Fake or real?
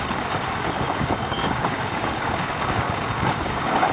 fake